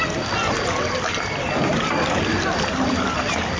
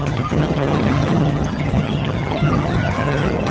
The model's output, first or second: second